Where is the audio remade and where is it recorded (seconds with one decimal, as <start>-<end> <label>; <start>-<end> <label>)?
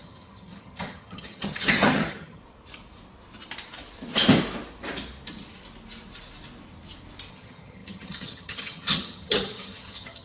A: 0.0-2.4 remade; 2.4-7.3 recorded; 7.3-10.2 remade